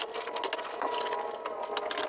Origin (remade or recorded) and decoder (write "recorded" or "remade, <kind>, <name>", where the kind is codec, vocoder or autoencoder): recorded